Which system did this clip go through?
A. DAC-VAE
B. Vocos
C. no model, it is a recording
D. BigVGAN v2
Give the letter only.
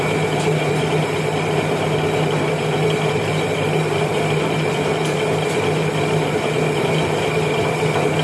C